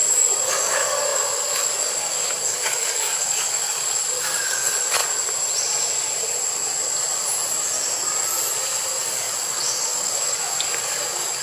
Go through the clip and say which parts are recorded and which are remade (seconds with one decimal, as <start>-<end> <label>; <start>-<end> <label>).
0.0-5.0 remade; 5.0-9.0 recorded; 9.0-11.4 remade